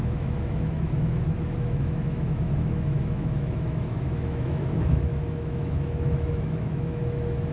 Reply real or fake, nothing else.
fake